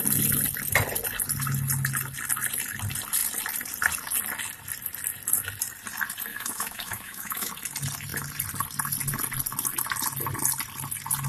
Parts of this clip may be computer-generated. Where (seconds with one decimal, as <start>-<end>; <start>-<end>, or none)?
6.3-7.5